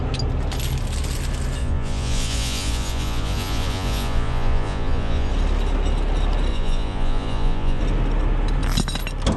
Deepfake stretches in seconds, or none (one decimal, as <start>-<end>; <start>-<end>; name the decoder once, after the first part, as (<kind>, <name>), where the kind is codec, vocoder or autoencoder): 1.6-5.3 (vocoder, Vocos); 6.5-7.8